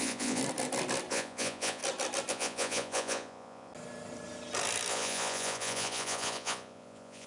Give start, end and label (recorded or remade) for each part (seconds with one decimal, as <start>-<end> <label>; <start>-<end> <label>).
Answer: 0.0-0.4 remade; 0.4-1.1 recorded; 1.1-1.8 remade; 1.8-2.3 recorded; 2.3-3.7 remade; 3.7-4.9 recorded; 4.9-7.3 remade